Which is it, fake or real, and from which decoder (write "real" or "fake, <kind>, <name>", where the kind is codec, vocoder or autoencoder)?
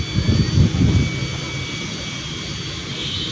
real